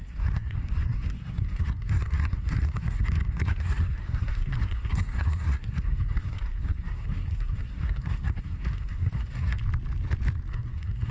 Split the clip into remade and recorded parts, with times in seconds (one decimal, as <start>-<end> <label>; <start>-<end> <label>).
0.0-9.6 remade; 9.6-10.5 recorded; 10.5-11.1 remade